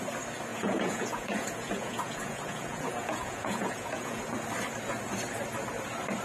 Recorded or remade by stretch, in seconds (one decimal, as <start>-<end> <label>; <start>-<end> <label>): 0.0-0.5 recorded; 0.5-4.2 remade; 4.2-6.2 recorded